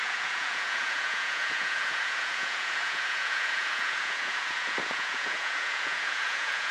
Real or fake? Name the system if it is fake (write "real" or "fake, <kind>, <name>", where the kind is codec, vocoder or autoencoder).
fake, vocoder, Vocos